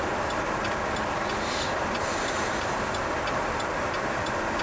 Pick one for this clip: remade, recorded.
recorded